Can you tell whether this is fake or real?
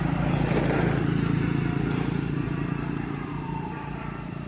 real